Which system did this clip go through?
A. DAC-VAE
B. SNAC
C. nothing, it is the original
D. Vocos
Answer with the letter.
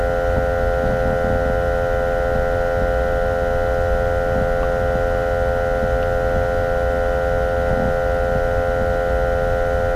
C